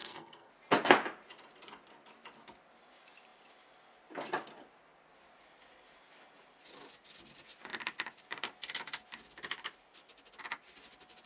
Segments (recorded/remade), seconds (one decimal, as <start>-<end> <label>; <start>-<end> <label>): 0.0-0.5 remade; 0.5-11.3 recorded